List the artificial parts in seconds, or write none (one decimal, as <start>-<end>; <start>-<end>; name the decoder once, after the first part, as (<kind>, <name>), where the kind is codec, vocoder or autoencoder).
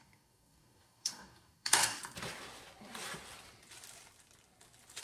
0.0-2.0 (codec, DAC)